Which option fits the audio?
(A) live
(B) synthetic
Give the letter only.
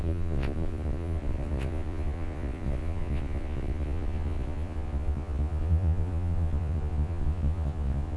B